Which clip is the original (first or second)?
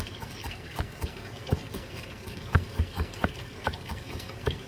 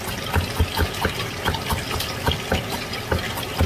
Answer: second